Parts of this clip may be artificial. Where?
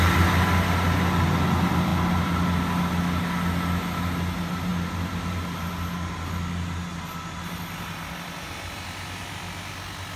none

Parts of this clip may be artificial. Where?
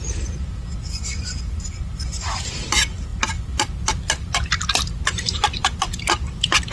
none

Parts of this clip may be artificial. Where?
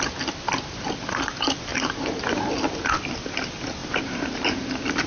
0.0-5.1 (vocoder, BigVGAN v2)